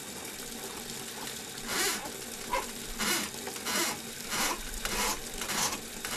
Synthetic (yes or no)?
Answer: no